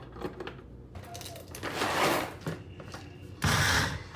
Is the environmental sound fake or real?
real